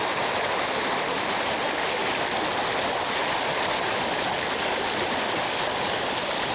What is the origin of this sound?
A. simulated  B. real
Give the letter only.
B